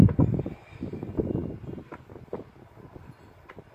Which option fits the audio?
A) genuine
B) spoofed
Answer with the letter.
A